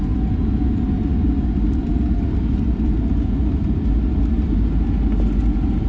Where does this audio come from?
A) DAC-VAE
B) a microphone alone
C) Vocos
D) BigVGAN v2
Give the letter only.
B